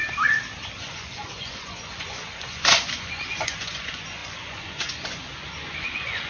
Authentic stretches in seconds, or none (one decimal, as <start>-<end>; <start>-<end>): 0.0-0.8

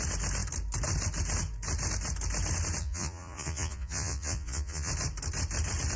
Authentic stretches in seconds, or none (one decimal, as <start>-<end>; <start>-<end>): 0.0-2.8; 4.9-6.0

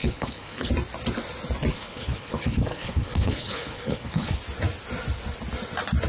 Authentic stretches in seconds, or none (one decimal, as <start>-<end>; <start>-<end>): 0.7-1.7; 4.4-6.1

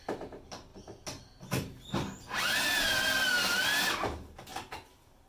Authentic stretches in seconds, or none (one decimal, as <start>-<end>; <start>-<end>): 0.0-5.3

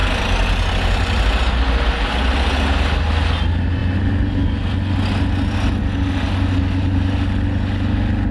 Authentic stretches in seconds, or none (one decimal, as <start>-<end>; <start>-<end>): 0.0-8.3

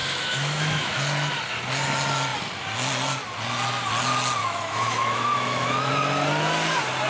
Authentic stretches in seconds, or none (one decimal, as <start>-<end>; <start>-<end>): 1.0-4.4; 5.9-7.1

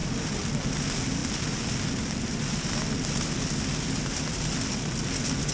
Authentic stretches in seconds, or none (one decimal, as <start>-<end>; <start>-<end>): 0.0-5.5